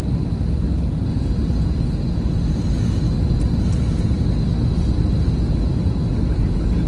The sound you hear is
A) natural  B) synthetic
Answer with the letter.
A